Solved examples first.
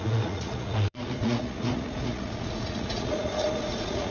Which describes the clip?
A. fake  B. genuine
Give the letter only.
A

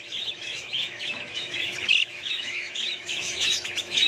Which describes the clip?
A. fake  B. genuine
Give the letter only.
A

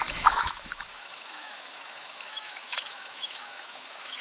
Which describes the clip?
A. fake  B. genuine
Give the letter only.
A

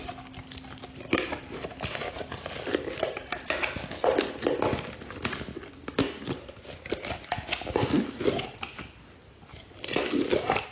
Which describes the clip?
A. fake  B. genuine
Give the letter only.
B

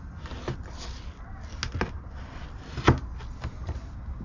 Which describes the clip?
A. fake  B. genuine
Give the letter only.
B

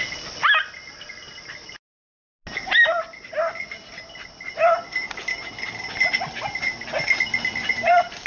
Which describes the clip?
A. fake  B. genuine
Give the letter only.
B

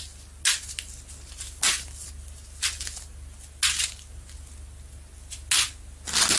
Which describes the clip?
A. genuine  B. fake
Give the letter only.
A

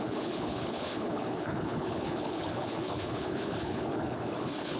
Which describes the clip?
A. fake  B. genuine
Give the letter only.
A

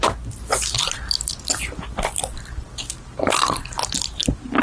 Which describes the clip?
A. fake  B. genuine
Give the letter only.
B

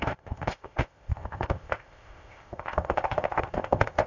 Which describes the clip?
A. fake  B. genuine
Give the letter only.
A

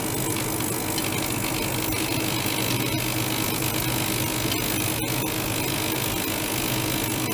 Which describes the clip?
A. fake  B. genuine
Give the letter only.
B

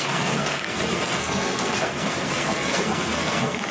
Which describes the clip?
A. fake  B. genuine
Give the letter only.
A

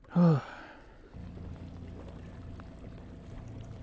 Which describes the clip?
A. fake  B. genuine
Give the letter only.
B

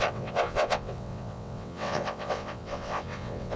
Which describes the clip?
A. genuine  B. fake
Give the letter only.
B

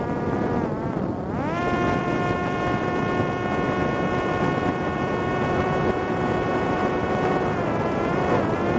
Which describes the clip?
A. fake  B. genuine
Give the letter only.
A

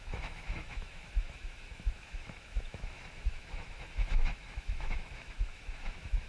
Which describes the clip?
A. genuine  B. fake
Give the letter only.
B